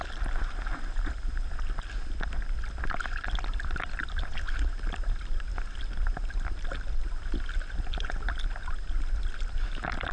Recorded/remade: recorded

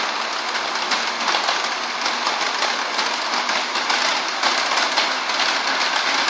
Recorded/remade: recorded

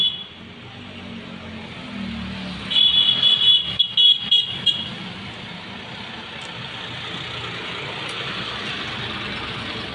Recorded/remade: recorded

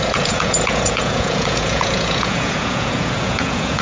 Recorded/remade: remade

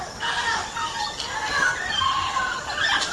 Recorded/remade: recorded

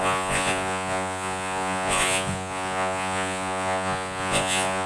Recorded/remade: remade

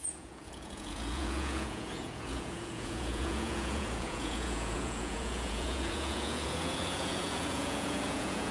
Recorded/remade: remade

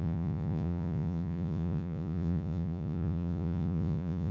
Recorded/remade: remade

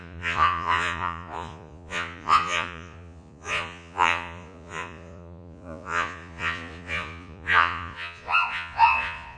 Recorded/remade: remade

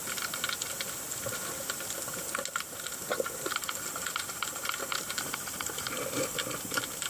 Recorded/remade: recorded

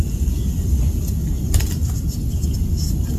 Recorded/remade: recorded